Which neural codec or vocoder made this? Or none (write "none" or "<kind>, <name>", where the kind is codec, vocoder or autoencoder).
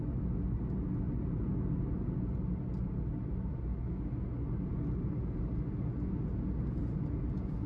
none